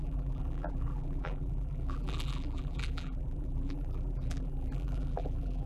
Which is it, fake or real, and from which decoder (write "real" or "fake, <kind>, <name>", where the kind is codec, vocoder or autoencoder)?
fake, vocoder, BigVGAN v2